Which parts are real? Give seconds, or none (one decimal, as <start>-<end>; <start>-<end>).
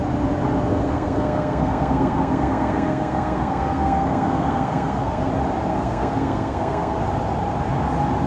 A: 0.0-0.7; 5.3-5.7; 7.0-8.3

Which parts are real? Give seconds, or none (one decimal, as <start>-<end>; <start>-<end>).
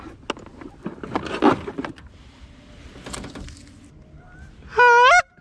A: 0.0-5.4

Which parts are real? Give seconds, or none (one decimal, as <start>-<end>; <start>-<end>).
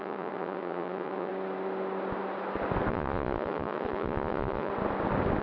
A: 1.3-2.9; 4.7-5.4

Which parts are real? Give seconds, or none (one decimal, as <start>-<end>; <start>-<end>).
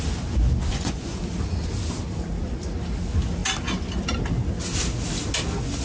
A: 0.0-0.7; 1.2-5.8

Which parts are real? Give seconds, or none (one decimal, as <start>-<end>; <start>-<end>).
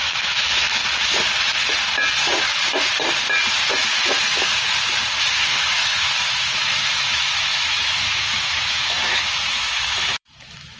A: 0.8-5.2